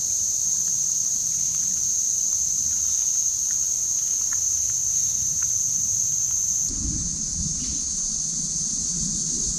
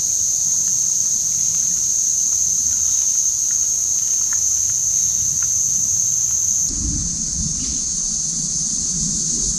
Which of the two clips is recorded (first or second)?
second